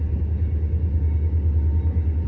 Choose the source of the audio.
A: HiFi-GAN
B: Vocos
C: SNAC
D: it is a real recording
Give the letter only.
D